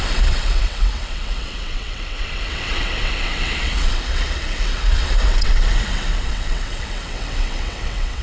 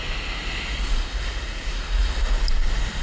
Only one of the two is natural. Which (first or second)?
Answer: second